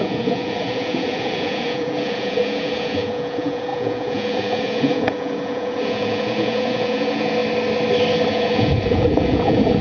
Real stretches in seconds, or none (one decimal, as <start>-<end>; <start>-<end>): 7.4-8.3